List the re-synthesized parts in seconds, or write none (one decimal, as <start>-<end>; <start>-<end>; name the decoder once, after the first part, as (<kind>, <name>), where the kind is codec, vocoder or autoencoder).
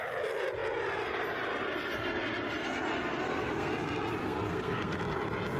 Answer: 2.9-3.7 (codec, SNAC); 4.2-5.0